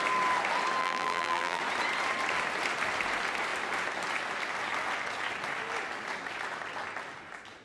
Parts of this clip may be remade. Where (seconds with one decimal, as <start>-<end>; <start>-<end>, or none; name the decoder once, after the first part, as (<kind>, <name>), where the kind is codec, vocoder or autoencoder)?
0.8-1.6 (vocoder, BigVGAN v2)